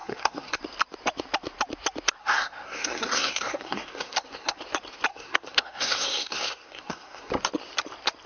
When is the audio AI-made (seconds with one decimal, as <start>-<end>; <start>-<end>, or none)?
0.0-0.6; 2.2-4.6; 5.1-7.3